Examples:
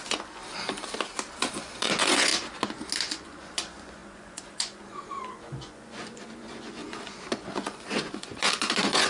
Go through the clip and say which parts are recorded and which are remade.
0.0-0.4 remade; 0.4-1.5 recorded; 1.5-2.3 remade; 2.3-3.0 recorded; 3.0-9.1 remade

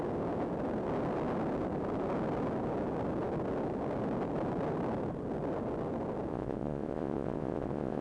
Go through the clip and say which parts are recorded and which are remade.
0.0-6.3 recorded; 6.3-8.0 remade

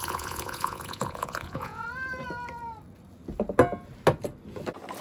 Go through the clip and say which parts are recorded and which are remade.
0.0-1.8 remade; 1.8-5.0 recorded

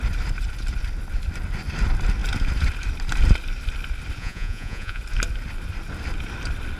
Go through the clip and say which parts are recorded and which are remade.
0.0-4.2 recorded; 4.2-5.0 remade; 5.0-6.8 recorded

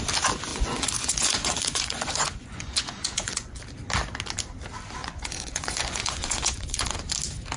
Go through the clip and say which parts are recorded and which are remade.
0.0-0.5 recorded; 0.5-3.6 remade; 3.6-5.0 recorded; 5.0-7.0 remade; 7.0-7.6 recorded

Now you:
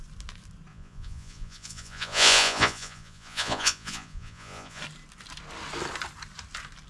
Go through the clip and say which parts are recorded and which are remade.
0.0-0.7 recorded; 0.7-4.8 remade; 4.8-6.9 recorded